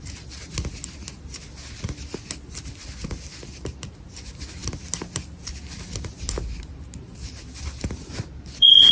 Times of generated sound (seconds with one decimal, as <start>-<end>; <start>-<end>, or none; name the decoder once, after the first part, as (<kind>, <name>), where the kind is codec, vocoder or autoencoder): none